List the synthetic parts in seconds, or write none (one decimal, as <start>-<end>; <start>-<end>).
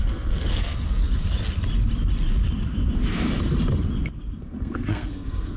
0.0-1.0; 4.4-5.6